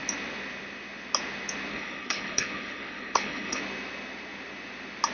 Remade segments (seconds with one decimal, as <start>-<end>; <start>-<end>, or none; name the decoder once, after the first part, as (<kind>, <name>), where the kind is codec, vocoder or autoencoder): 1.7-3.6 (codec, HILCodec)